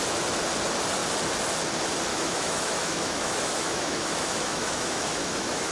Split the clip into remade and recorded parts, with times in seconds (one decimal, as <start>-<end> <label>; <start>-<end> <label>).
0.0-2.1 recorded; 2.1-5.7 remade